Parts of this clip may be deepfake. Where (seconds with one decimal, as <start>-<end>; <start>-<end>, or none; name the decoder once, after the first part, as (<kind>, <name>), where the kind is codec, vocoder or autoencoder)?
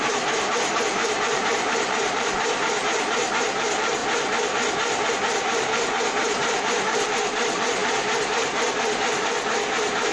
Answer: 0.0-4.0 (vocoder, BigVGAN v2); 5.1-10.1